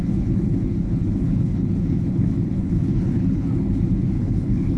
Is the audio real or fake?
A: fake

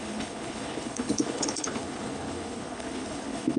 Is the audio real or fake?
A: fake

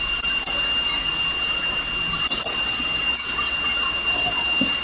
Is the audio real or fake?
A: real